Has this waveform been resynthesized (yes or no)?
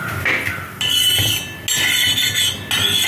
no